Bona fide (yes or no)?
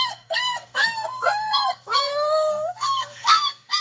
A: no